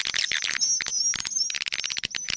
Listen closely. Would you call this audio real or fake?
real